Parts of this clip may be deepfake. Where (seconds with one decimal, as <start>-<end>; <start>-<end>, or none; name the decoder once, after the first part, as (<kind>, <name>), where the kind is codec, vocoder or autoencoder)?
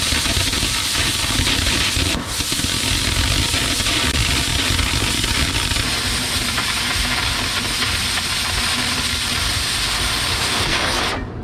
10.5-11.0 (codec, SNAC)